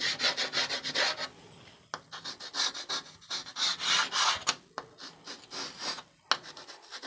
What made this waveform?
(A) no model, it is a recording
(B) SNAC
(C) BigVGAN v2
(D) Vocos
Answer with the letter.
A